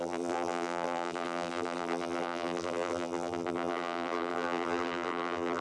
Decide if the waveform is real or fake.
fake